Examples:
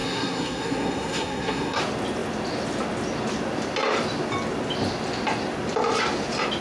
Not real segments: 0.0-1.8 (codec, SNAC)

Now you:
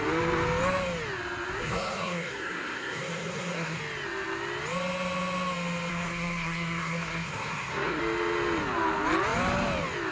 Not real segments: 1.6-3.8 (codec, SNAC); 5.9-8.0

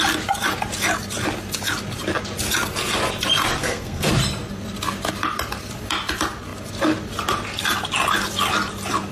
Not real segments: 3.6-4.1 (codec, SNAC)

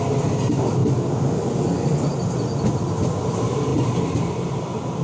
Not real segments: none

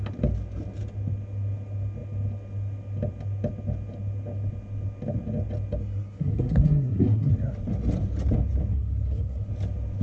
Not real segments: 5.8-7.3 (codec, SNAC); 8.7-9.5